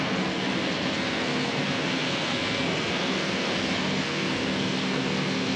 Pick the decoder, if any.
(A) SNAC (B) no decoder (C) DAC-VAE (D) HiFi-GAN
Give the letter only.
A